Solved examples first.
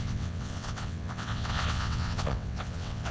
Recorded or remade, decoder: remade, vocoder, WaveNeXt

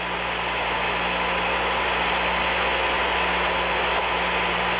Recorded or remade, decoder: recorded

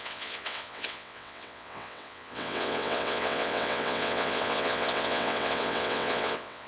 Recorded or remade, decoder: remade, vocoder, WaveNeXt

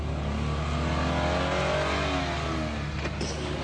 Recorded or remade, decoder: recorded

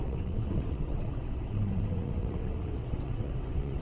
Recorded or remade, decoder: remade, vocoder, WaveNeXt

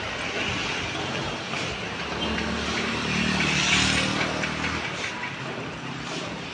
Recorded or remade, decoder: recorded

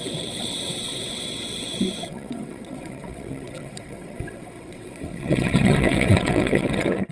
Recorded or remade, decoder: remade, vocoder, WaveNeXt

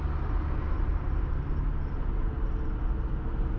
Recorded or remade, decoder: recorded